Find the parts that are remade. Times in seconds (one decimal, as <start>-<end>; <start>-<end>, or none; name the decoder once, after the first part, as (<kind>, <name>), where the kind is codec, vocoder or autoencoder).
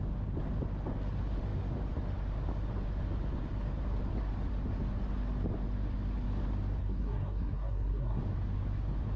6.8-8.2 (codec, SNAC)